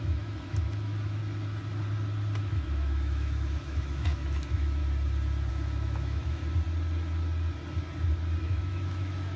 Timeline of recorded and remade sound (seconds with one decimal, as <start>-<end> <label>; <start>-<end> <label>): 0.0-1.2 remade; 1.2-2.4 recorded; 2.4-4.8 remade; 4.8-5.5 recorded; 5.5-6.4 remade; 6.4-8.4 recorded; 8.4-9.4 remade